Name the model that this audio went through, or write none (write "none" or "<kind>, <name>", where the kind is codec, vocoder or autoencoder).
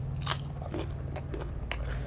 none